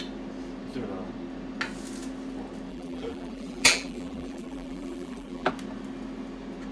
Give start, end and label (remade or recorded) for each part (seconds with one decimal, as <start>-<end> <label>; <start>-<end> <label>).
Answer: 0.0-2.7 recorded; 2.7-5.5 remade; 5.5-6.7 recorded